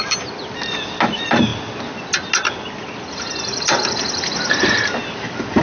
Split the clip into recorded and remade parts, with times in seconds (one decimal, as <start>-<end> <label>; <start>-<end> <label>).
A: 0.0-5.6 recorded